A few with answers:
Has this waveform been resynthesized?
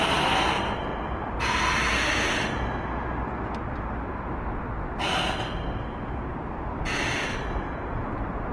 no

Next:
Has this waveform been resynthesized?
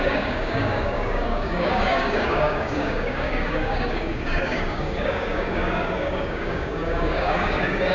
yes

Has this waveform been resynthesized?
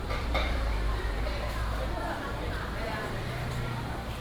yes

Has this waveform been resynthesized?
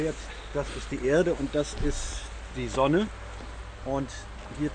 no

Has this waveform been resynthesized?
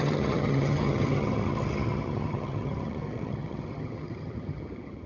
yes